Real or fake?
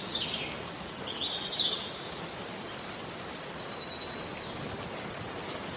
real